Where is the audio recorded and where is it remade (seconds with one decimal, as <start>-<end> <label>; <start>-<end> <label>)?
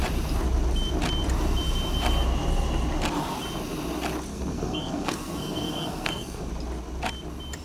0.0-4.3 recorded; 4.3-6.5 remade; 6.5-7.6 recorded